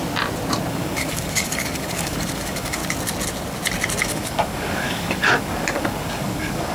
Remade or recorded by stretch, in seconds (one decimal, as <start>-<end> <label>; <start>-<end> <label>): 0.0-0.7 recorded; 0.7-2.8 remade; 2.8-4.0 recorded; 4.0-6.7 remade